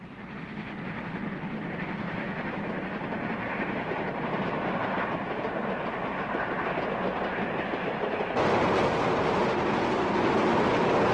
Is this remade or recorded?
recorded